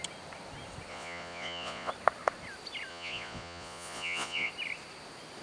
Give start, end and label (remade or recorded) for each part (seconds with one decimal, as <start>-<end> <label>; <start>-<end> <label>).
0.0-0.9 recorded; 0.9-1.9 remade; 1.9-2.9 recorded; 2.9-4.5 remade; 4.5-5.4 recorded